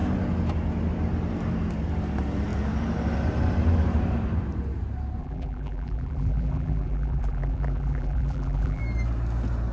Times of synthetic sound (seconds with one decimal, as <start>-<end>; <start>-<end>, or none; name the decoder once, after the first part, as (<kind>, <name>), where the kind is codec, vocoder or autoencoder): 5.2-8.8 (vocoder, BigVGAN v2)